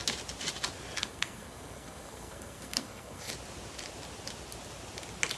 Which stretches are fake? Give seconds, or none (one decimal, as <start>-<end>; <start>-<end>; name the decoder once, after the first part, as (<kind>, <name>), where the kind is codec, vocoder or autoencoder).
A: 1.0-3.3 (codec, SNAC)